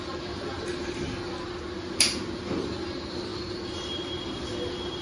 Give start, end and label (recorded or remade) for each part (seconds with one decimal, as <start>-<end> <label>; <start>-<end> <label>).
0.0-5.0 recorded